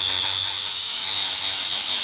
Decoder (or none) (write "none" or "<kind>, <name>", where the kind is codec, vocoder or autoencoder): autoencoder, DAC-VAE